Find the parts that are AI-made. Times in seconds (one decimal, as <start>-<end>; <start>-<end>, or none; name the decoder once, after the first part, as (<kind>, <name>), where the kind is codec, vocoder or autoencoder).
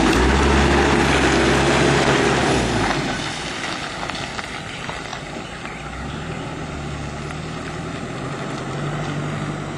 2.4-3.3 (vocoder, BigVGAN v2)